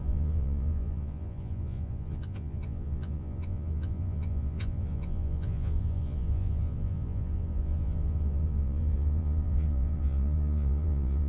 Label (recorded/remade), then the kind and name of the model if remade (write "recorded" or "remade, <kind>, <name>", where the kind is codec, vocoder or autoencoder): remade, vocoder, Vocos